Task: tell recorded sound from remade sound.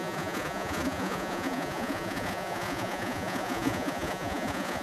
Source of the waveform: remade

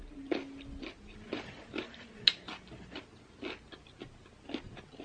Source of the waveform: recorded